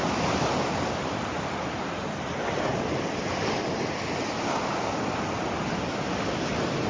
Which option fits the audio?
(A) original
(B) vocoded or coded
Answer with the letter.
A